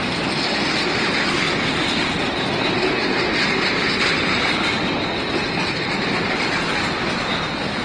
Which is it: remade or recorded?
recorded